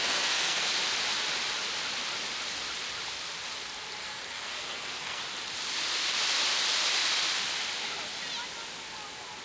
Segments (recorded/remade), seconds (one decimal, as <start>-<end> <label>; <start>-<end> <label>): 0.0-0.7 remade; 0.7-4.0 recorded; 4.0-5.2 remade; 5.2-9.4 recorded